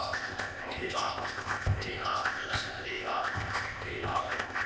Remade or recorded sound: remade